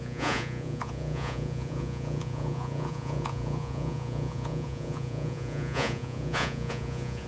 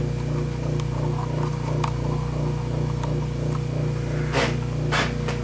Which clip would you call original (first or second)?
second